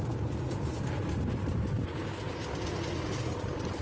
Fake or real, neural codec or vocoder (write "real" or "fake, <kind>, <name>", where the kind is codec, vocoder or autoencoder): real